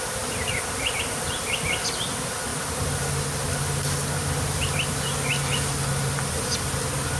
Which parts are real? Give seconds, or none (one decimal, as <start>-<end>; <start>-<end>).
0.0-7.2